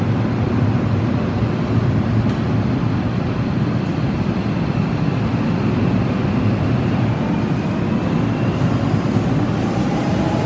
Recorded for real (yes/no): yes